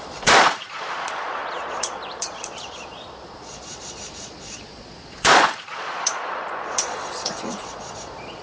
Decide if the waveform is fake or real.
fake